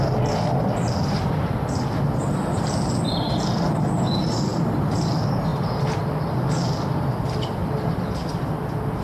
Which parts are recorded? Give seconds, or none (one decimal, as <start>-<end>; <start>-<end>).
0.0-4.5; 5.1-7.6; 8.3-9.0